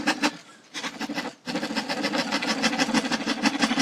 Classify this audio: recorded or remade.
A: recorded